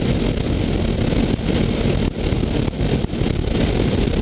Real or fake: real